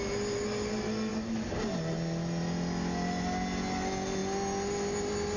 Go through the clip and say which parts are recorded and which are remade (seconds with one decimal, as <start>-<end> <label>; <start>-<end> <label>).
0.0-5.4 recorded